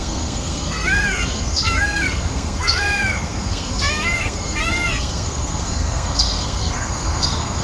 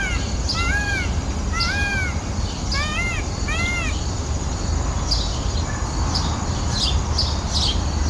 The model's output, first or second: first